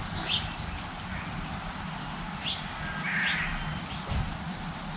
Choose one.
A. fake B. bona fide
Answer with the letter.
B